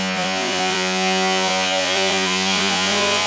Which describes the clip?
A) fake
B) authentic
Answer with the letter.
A